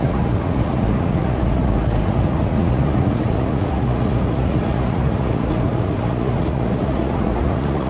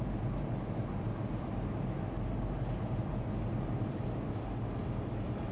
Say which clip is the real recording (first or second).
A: second